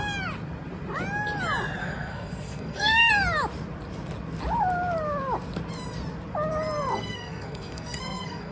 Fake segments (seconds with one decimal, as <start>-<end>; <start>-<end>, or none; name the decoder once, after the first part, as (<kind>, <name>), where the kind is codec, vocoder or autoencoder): 1.8-3.1 (codec, SNAC); 6.9-8.5

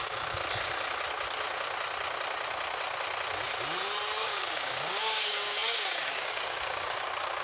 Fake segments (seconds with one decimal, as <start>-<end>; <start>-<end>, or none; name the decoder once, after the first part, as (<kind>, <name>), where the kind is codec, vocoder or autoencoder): 0.0-0.4 (codec, DAC); 4.2-7.4

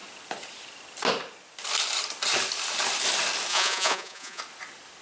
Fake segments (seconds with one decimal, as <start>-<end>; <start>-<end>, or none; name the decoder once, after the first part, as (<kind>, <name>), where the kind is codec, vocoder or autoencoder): 3.5-4.4 (vocoder, Vocos)

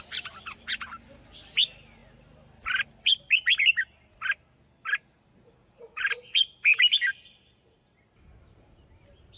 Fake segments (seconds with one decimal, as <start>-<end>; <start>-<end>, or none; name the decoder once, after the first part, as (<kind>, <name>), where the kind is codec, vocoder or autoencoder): none

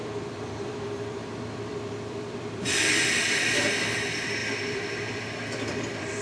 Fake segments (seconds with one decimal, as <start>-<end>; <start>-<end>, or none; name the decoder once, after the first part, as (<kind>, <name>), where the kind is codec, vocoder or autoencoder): 0.0-3.7 (vocoder, BigVGAN v2); 4.4-6.2

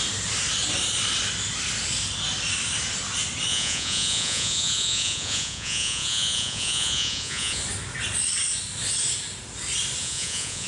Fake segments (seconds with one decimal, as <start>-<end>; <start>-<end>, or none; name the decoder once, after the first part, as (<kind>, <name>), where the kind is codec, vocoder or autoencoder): 3.5-7.6 (vocoder, Vocos); 10.0-10.7

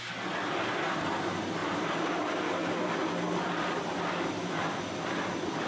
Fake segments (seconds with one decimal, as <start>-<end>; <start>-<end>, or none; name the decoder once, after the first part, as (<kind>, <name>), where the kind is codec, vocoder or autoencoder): none

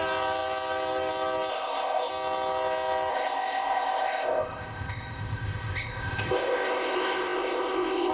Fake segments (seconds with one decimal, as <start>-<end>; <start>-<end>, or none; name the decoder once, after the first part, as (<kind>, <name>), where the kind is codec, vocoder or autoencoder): 1.5-2.1 (codec, ZipCodec); 3.1-8.1